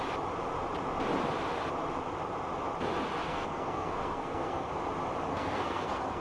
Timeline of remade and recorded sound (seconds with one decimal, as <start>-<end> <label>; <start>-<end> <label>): 0.0-3.2 recorded; 3.2-4.7 remade; 4.7-5.3 recorded; 5.3-6.2 remade